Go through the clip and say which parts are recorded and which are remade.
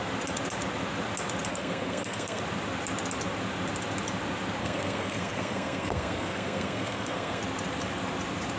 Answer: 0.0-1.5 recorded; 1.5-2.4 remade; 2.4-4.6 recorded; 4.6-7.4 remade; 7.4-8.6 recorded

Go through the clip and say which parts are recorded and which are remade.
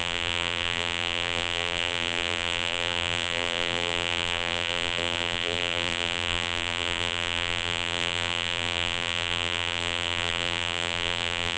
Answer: 0.0-11.6 remade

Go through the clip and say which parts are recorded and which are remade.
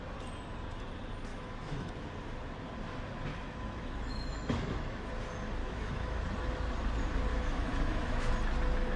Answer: 0.0-1.3 recorded; 1.3-1.9 remade; 1.9-3.3 recorded; 3.3-5.1 remade; 5.1-5.6 recorded; 5.6-6.2 remade; 6.2-7.3 recorded; 7.3-8.3 remade; 8.3-9.0 recorded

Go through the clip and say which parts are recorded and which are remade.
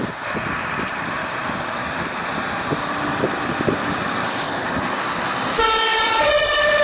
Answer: 0.0-1.4 recorded; 1.4-5.0 remade; 5.0-5.9 recorded; 5.9-6.8 remade